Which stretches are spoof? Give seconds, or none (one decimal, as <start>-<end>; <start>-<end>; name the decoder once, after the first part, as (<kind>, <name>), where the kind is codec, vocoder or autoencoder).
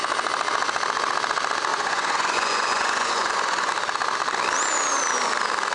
1.7-3.7 (vocoder, Vocos)